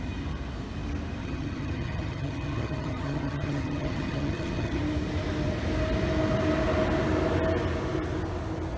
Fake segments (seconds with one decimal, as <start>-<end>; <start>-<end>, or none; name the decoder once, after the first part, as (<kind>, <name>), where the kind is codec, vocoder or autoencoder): 1.2-4.8 (vocoder, HiFi-GAN)